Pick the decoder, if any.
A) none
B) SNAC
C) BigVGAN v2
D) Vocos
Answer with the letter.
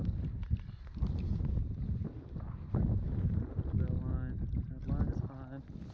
A